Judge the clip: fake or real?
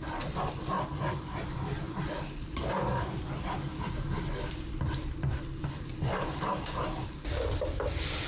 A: real